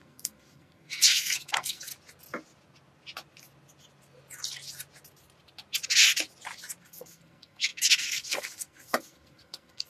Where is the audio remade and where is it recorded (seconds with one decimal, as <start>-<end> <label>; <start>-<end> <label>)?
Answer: 0.0-1.9 remade; 1.9-6.8 recorded; 6.8-9.9 remade